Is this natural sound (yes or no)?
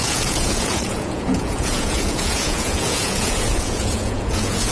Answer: no